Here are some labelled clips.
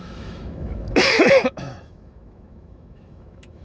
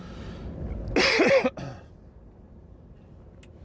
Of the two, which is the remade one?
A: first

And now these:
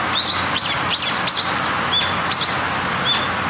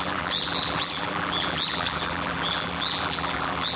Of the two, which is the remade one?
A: second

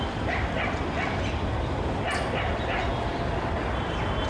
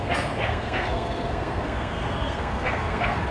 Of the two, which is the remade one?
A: second